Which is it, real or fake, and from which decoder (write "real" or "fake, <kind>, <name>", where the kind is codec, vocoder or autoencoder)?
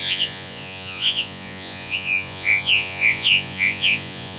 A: fake, vocoder, Vocos